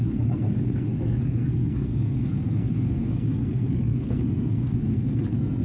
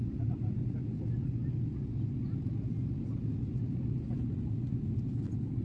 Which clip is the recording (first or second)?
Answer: second